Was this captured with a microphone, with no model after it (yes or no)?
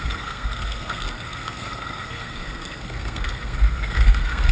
no